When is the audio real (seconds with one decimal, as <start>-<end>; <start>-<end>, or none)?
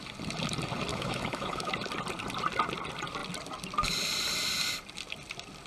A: 0.0-0.9; 1.7-5.7